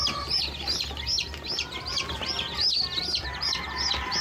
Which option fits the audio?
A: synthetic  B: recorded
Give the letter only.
B